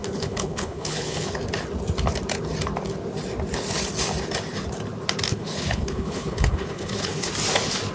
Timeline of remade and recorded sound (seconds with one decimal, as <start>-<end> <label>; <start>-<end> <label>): 0.0-1.3 remade; 1.3-5.3 recorded; 5.3-7.3 remade; 7.3-7.9 recorded

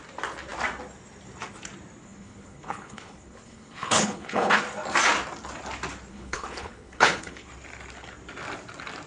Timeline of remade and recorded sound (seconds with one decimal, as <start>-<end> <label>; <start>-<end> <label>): 0.0-2.0 recorded; 2.0-4.6 remade; 4.6-6.1 recorded; 6.1-7.5 remade; 7.5-9.1 recorded

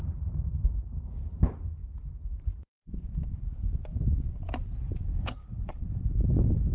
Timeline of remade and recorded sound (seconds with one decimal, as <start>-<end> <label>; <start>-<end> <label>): 0.0-5.1 recorded; 5.1-6.0 remade; 6.0-6.7 recorded